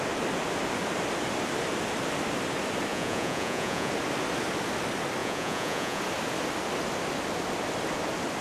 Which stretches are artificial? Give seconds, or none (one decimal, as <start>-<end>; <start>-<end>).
2.9-3.9; 5.2-6.0